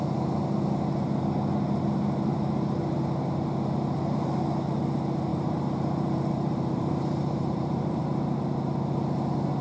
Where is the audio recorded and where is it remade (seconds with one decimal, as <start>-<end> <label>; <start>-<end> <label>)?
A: 0.0-2.3 recorded; 2.3-3.0 remade; 3.0-5.3 recorded; 5.3-8.0 remade; 8.0-9.6 recorded